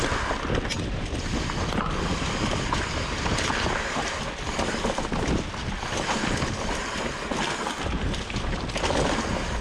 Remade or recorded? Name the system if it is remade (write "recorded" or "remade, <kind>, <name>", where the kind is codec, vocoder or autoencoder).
recorded